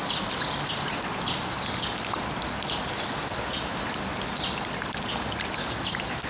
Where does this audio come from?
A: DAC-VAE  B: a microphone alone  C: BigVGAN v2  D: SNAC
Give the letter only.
B